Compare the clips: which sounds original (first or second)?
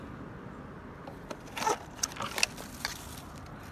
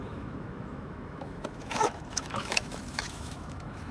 first